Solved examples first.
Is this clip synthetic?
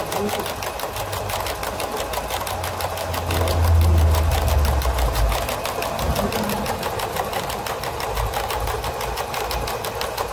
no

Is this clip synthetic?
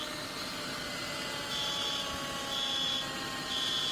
no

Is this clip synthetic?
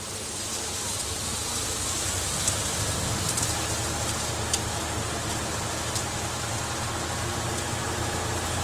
no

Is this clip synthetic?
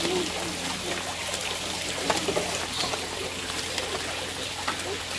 no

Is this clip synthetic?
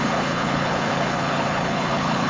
yes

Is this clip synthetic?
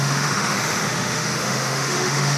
yes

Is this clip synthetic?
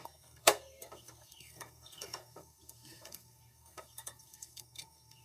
yes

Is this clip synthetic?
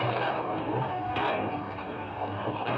yes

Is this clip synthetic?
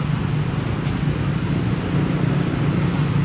no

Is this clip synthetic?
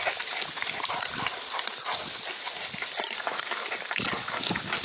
no